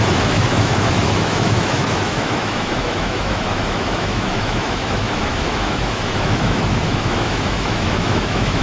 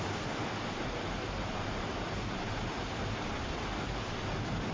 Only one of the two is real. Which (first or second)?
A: second